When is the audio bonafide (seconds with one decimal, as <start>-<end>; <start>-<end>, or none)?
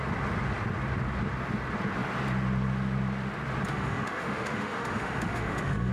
0.0-3.7